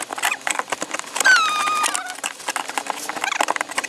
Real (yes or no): yes